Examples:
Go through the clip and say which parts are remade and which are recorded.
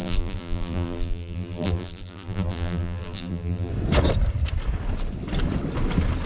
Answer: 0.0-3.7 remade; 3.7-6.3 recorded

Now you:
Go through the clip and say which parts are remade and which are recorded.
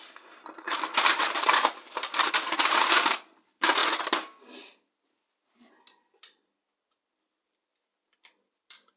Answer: 0.0-3.8 remade; 3.8-8.5 recorded; 8.5-9.0 remade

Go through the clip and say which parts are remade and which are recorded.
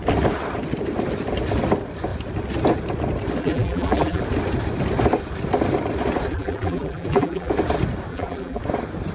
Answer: 0.0-3.4 recorded; 3.4-4.2 remade; 4.2-6.3 recorded; 6.3-7.5 remade; 7.5-8.1 recorded; 8.1-8.6 remade; 8.6-9.1 recorded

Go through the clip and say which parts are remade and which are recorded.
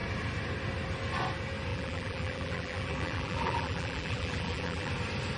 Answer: 0.0-1.7 recorded; 1.7-4.9 remade; 4.9-5.4 recorded